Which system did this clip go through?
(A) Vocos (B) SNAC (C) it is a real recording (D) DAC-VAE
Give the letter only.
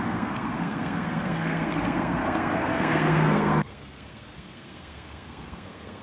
B